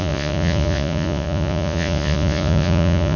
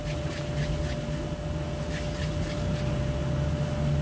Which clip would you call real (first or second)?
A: second